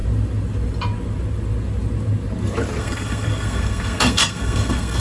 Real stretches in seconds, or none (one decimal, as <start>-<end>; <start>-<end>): 0.0-2.8

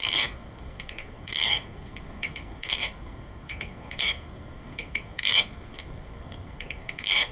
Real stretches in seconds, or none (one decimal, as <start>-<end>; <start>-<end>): none

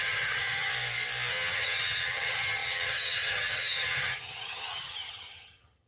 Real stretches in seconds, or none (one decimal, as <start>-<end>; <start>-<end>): 0.7-1.3

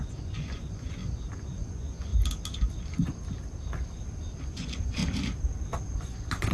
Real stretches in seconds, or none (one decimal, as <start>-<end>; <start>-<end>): 1.0-1.6; 2.1-4.4; 5.0-6.0

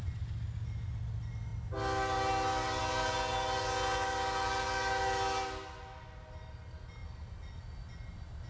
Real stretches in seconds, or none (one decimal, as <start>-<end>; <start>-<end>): 0.0-8.5

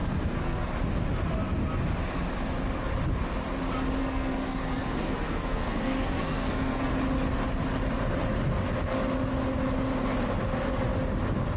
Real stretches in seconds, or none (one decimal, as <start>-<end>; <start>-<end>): 0.7-4.0; 6.9-11.6

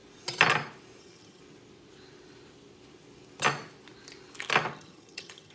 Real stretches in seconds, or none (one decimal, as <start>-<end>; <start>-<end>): 0.0-1.0; 1.4-4.7

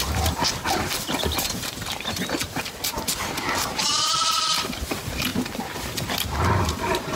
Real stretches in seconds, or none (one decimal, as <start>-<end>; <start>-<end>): 5.3-5.8